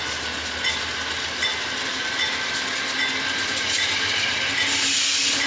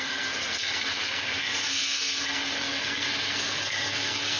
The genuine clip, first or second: first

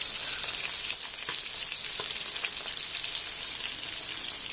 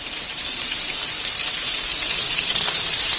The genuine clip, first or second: first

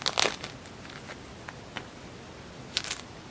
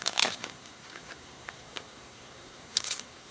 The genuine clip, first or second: first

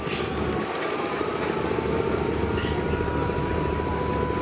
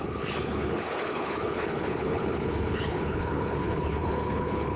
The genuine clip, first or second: first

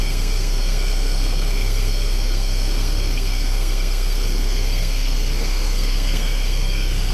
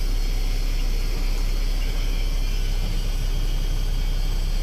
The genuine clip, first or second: second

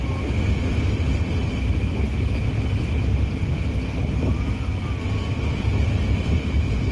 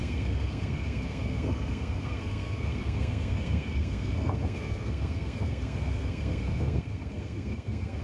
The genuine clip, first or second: first